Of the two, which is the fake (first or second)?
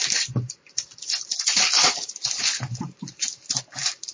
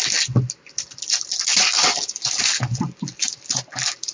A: first